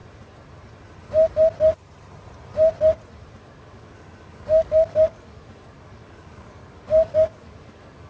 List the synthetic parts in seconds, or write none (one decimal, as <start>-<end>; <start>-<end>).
3.4-8.1